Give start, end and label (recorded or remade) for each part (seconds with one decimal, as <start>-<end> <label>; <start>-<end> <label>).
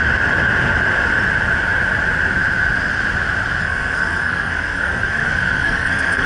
0.0-3.6 recorded; 3.6-6.3 remade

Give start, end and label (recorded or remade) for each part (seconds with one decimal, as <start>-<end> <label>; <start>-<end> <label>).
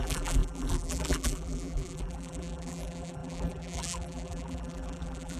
0.0-5.4 remade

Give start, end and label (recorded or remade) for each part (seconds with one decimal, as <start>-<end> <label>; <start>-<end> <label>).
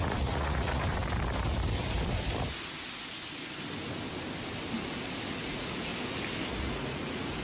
0.0-1.0 remade; 1.0-5.4 recorded; 5.4-5.9 remade; 5.9-6.6 recorded; 6.6-7.4 remade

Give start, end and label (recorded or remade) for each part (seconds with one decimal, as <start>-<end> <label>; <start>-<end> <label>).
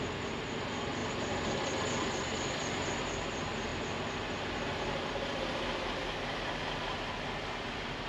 0.0-8.1 recorded